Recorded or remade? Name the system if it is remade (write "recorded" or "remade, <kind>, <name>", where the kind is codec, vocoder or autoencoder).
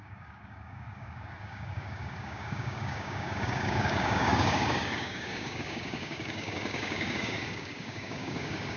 remade, codec, DAC